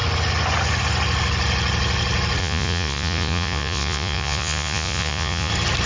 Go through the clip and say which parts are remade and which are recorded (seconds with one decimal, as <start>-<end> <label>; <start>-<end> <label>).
0.0-2.4 recorded; 2.4-5.5 remade; 5.5-5.9 recorded